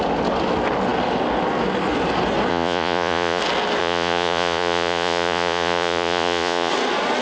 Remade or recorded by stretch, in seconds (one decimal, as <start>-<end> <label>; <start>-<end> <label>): 0.0-2.5 recorded; 2.5-3.4 remade; 3.4-3.8 recorded; 3.8-6.7 remade; 6.7-7.2 recorded

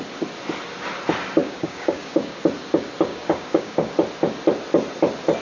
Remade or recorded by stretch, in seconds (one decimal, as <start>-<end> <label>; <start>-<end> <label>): 0.0-1.4 recorded; 1.4-2.4 remade; 2.4-3.1 recorded; 3.1-3.9 remade; 3.9-5.4 recorded

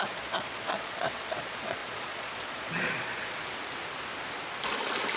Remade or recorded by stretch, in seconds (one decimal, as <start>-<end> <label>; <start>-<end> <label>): 0.0-3.4 remade; 3.4-5.2 recorded

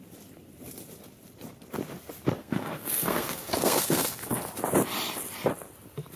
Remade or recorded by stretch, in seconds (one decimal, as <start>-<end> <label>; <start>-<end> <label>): 0.0-2.4 recorded; 2.4-4.4 remade; 4.4-6.2 recorded